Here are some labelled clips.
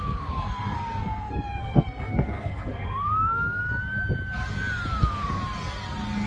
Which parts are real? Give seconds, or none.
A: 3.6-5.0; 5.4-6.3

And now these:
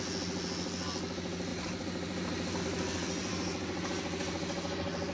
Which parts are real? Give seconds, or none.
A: 0.0-1.5; 2.6-3.2; 3.9-5.1

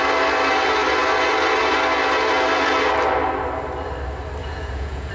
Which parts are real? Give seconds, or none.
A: 0.0-4.4